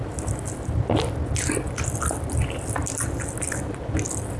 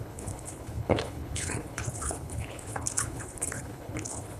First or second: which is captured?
first